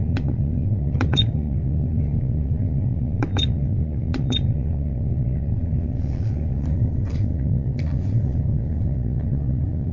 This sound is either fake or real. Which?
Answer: fake